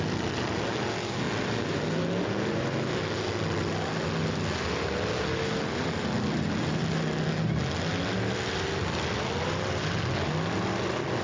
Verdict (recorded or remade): recorded